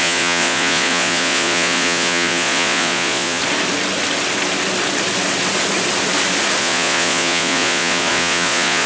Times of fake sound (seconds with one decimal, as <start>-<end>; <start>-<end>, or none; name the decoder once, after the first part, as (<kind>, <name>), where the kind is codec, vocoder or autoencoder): 0.0-3.4 (vocoder, Vocos); 6.6-8.9